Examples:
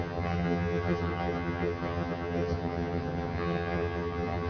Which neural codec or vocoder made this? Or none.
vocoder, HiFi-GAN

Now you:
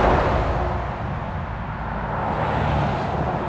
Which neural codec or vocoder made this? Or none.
none